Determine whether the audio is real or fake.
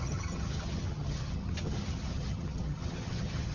fake